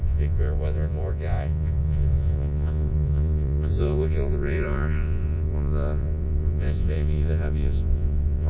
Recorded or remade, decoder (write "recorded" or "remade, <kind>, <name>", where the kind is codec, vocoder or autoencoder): remade, vocoder, Vocos